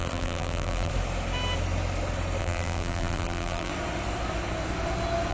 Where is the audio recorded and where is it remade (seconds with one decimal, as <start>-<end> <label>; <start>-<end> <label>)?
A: 0.0-0.9 remade; 0.9-2.4 recorded; 2.4-3.7 remade; 3.7-5.3 recorded